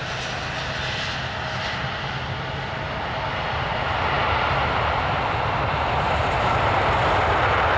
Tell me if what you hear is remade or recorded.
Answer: recorded